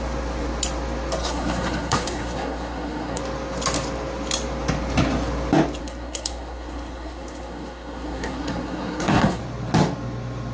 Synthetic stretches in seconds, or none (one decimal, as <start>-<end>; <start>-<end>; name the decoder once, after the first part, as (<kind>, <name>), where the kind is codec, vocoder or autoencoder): 1.2-3.2 (codec, SNAC); 5.8-9.4